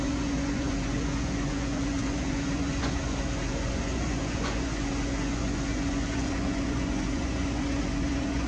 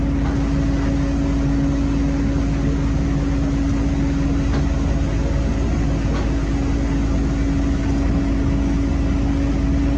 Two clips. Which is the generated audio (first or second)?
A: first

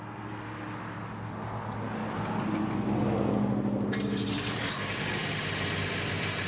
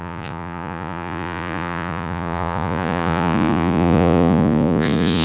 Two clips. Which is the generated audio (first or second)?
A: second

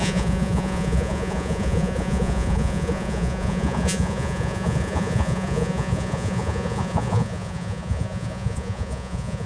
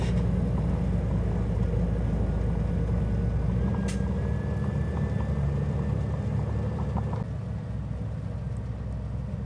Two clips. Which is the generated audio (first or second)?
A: first